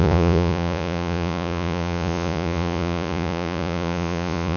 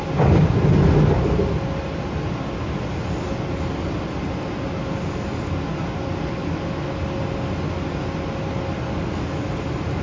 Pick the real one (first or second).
second